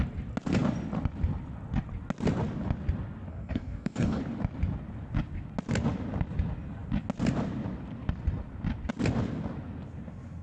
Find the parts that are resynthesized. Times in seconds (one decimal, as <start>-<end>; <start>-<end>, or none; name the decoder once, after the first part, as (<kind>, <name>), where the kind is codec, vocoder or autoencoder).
3.3-4.2 (codec, DAC)